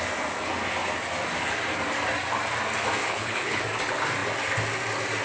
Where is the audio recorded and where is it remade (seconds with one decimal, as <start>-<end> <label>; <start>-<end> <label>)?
0.0-3.0 recorded; 3.0-3.6 remade; 3.6-5.2 recorded